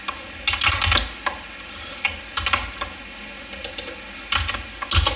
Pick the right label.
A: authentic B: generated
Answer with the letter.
A